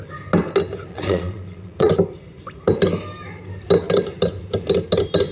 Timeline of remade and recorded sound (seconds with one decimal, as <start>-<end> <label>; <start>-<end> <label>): 0.0-0.9 recorded; 0.9-1.9 remade; 1.9-5.3 recorded

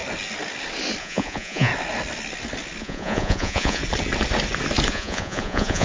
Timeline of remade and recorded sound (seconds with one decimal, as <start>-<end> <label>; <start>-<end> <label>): 0.0-1.0 recorded; 1.0-1.7 remade; 1.7-2.8 recorded; 2.8-3.8 remade; 3.8-4.9 recorded; 4.9-5.8 remade

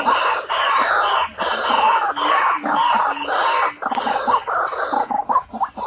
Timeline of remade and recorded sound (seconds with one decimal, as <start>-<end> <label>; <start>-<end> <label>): 0.0-5.9 recorded